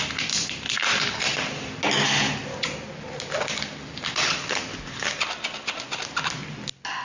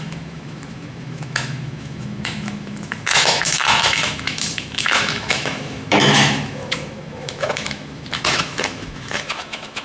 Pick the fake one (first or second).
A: second